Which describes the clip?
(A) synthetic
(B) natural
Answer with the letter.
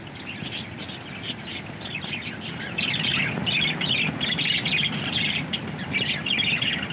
B